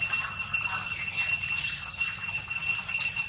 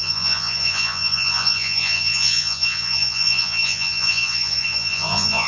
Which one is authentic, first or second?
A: first